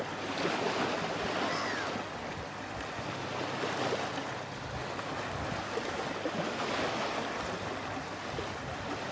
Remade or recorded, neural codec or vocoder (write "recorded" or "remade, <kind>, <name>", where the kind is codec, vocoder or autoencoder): recorded